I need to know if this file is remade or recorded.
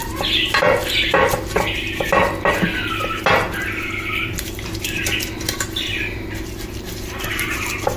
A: recorded